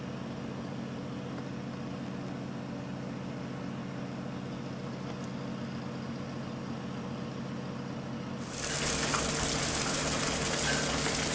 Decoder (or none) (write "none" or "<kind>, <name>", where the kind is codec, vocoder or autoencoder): none